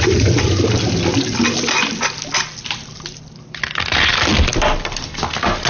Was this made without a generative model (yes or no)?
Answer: yes